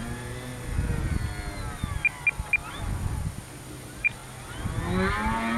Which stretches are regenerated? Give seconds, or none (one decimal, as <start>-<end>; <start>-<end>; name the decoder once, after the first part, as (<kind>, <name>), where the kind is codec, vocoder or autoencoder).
0.0-0.5 (vocoder, BigVGAN v2); 3.6-4.2